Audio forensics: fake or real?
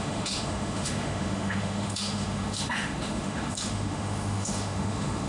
fake